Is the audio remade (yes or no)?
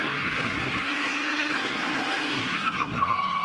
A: yes